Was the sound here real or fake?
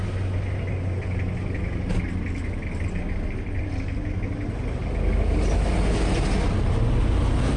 real